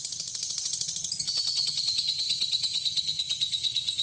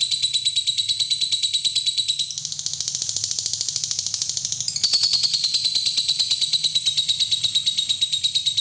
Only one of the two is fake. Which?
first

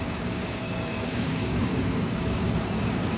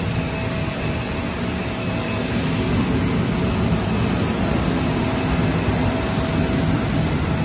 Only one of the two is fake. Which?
first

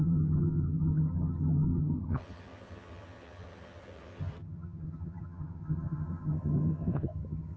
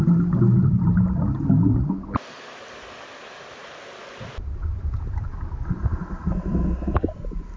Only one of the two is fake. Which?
first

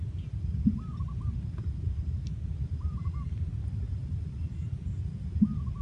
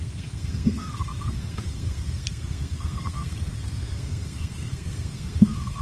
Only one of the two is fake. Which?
second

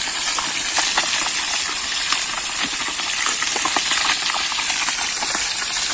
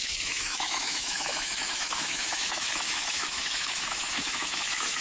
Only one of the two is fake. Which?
second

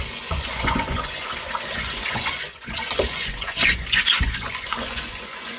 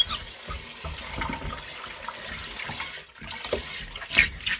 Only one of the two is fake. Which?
first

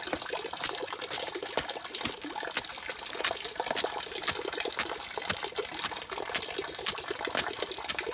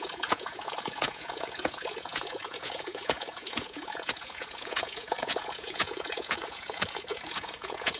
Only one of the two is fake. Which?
second